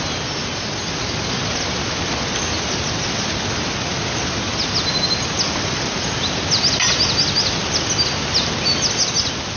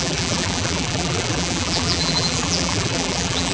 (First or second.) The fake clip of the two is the second